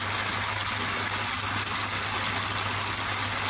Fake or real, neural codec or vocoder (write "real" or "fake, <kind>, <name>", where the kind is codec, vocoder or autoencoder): real